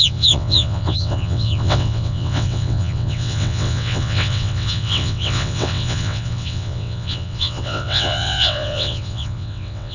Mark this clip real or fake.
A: fake